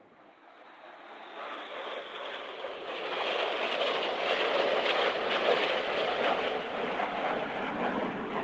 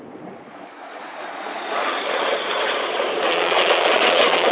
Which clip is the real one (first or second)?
first